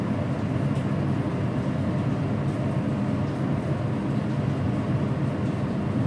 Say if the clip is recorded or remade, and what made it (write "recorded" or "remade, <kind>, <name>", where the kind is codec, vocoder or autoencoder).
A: recorded